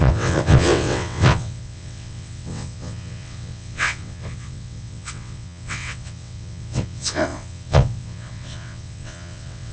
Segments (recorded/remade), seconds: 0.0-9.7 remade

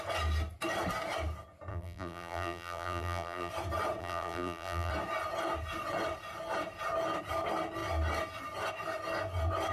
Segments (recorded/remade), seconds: 0.0-1.7 recorded; 1.7-3.5 remade; 3.5-4.0 recorded; 4.0-4.9 remade; 4.9-9.7 recorded

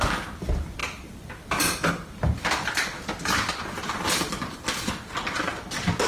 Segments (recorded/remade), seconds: 0.0-0.8 recorded; 0.8-1.9 remade; 1.9-3.0 recorded; 3.0-4.8 remade; 4.8-6.1 recorded

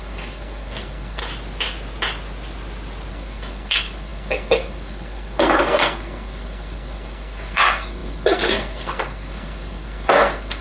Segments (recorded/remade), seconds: 0.0-1.2 remade; 1.2-3.1 recorded; 3.1-10.6 remade